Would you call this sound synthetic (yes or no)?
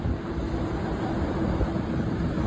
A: no